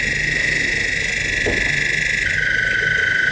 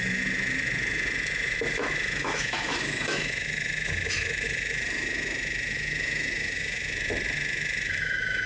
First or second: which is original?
first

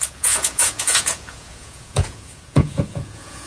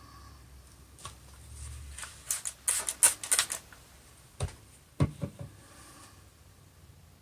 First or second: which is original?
second